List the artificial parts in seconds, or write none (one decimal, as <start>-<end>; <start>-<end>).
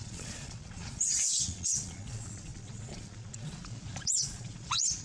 0.0-5.0